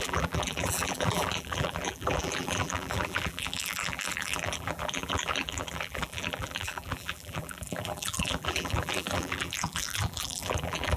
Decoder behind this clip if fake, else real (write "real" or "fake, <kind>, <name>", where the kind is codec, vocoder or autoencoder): fake, vocoder, BigVGAN v2